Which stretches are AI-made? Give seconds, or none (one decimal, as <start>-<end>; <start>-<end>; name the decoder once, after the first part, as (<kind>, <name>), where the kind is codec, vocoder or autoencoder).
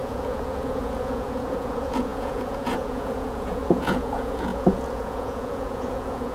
0.0-6.3 (vocoder, Vocos)